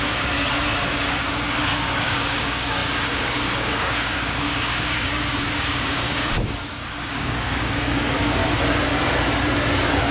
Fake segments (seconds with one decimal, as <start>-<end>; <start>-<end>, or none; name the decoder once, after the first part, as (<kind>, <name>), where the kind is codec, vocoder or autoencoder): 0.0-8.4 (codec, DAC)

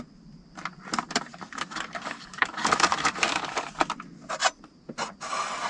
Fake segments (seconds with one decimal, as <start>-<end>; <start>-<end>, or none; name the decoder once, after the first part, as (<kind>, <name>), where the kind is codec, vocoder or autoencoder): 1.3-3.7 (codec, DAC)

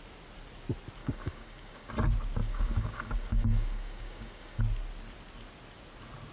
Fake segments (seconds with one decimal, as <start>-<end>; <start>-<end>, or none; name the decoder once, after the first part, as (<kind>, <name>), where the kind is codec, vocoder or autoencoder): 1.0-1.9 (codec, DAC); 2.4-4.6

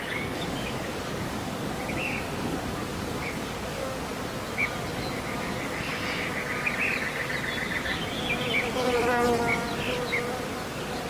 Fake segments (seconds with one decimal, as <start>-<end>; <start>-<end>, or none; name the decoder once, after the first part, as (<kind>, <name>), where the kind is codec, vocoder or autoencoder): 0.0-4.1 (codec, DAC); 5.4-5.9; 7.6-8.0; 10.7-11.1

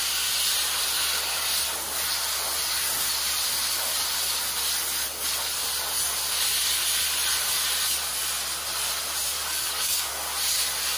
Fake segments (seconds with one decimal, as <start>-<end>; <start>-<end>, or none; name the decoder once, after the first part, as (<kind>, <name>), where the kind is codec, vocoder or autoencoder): 9.4-10.1 (codec, DAC)

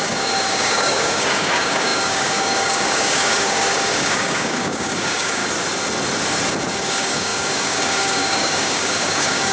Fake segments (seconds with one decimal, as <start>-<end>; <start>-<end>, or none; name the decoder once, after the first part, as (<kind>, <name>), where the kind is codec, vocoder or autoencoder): 0.0-5.4 (codec, DAC); 6.8-9.5

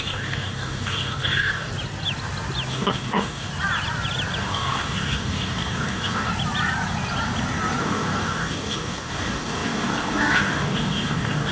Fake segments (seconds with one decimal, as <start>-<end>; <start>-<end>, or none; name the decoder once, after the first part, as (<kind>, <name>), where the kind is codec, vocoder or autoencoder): 0.0-1.7 (codec, DAC); 2.7-3.5; 4.4-6.3; 7.8-11.5

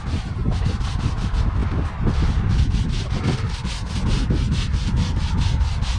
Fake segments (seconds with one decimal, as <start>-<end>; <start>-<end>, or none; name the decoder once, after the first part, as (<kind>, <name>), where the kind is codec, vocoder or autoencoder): none